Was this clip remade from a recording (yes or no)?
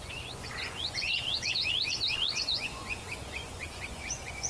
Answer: yes